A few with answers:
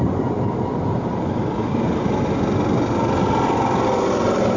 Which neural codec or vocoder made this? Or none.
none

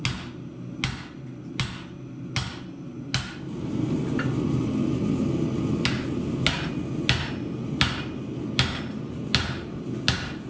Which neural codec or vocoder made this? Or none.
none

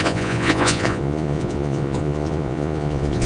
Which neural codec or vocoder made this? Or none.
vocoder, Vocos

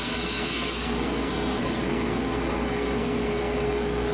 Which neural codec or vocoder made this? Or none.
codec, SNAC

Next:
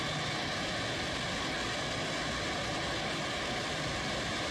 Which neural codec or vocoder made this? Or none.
none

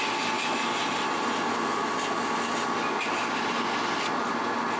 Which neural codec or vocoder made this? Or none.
none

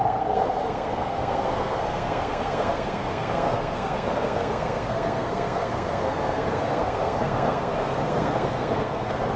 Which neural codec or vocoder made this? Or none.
codec, SNAC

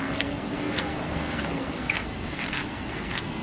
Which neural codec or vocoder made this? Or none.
codec, SNAC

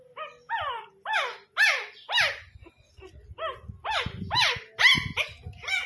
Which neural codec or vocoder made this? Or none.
none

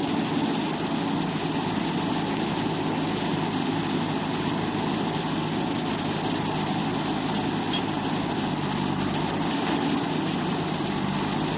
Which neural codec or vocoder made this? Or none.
none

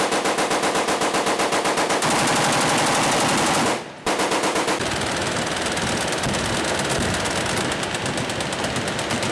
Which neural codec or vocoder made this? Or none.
none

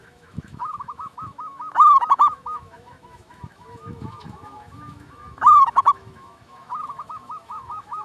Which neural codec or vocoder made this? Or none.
autoencoder, DAC-VAE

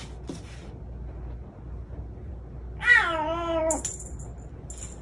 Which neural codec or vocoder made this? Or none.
none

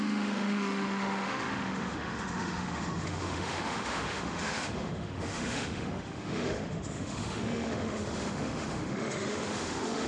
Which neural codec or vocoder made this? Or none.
autoencoder, DAC-VAE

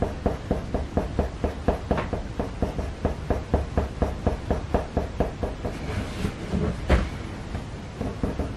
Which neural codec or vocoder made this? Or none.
none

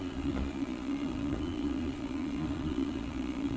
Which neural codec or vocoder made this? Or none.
vocoder, Vocos